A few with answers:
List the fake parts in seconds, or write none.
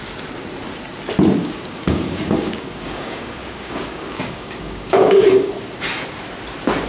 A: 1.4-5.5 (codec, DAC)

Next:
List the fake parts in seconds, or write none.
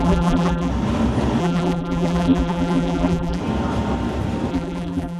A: 0.0-0.7 (vocoder, BigVGAN v2); 1.4-3.4; 4.5-5.2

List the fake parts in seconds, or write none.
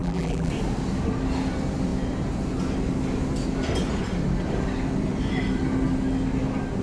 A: 0.0-0.5 (vocoder, BigVGAN v2)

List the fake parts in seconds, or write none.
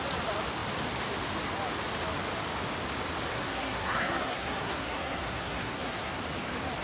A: 3.3-6.2 (codec, SNAC)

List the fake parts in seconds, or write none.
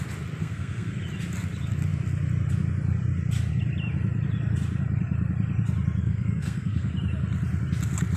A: 0.4-1.0 (codec, SNAC); 6.0-6.9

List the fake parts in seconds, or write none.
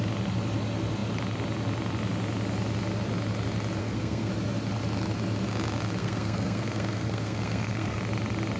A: 3.8-4.3 (codec, SNAC); 6.0-8.0